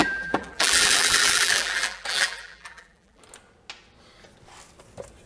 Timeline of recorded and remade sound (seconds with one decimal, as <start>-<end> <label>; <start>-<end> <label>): 0.0-3.2 remade; 3.2-5.3 recorded